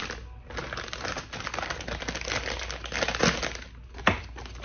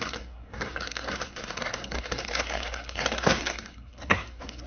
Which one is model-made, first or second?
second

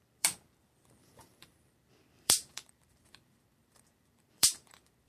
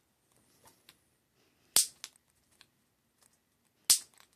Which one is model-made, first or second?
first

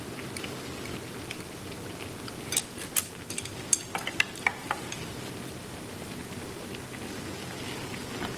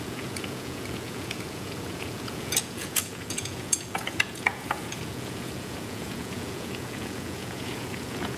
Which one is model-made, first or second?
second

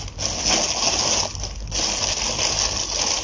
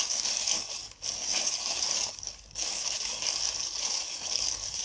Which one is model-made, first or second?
second